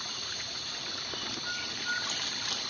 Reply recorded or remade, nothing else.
recorded